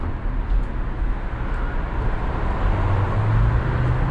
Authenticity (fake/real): real